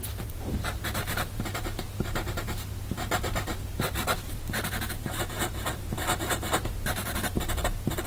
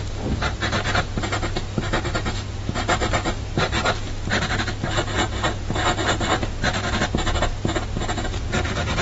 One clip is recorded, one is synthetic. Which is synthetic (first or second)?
first